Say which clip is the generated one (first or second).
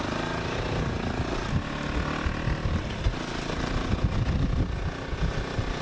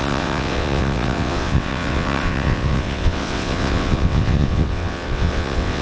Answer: second